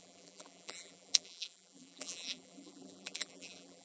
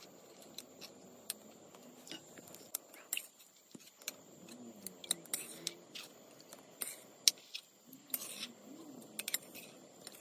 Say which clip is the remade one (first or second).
first